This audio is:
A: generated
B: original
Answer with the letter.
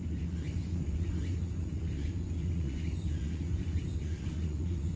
A